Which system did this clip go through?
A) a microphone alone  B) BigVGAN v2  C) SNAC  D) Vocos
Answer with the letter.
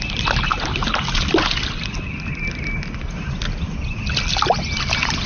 A